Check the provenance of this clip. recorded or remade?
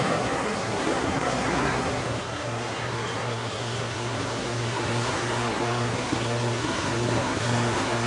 remade